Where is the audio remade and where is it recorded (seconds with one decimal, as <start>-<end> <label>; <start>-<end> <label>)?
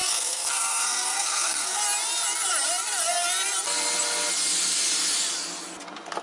0.0-1.8 remade; 1.8-6.2 recorded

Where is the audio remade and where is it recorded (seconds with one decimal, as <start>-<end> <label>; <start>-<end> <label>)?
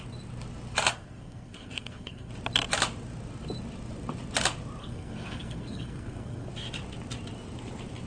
0.0-0.9 recorded; 0.9-2.3 remade; 2.3-4.8 recorded; 4.8-6.5 remade; 6.5-8.1 recorded